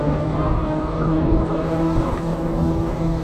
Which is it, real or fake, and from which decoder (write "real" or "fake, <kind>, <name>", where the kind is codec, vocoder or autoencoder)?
fake, codec, DAC